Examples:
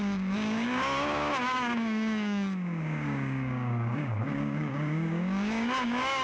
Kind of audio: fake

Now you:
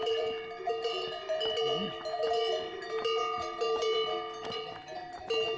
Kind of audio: real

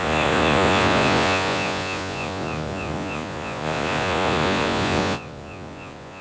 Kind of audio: fake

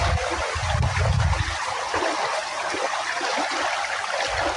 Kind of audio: real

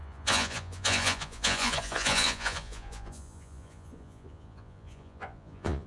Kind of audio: fake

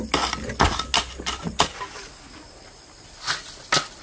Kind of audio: real